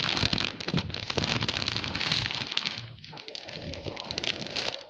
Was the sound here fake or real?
fake